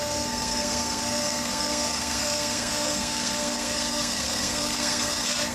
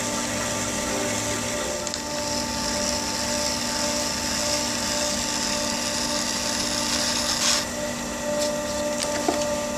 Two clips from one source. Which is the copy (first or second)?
first